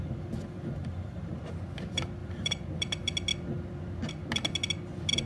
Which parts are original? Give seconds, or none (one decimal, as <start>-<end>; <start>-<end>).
0.0-0.8; 1.3-2.2; 2.7-5.3